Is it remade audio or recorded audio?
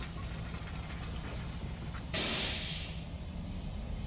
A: remade